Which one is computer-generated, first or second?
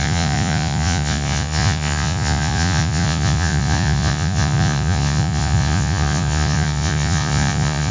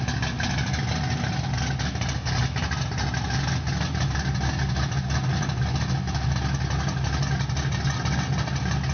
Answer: first